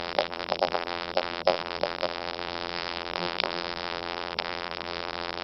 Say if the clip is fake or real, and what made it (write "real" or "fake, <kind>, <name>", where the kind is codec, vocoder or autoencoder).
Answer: fake, vocoder, BigVGAN v2